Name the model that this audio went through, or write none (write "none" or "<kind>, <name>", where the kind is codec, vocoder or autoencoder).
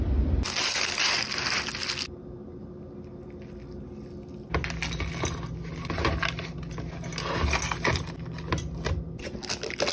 none